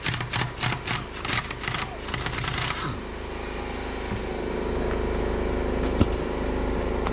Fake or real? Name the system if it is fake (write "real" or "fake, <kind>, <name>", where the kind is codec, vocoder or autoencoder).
real